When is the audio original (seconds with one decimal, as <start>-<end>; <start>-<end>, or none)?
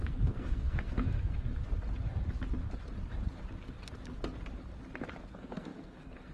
1.5-5.3